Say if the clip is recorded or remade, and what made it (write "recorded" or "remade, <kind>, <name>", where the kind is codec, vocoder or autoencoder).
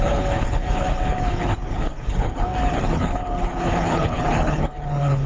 remade, codec, HILCodec